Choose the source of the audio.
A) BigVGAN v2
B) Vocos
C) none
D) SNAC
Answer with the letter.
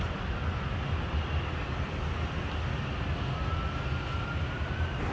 C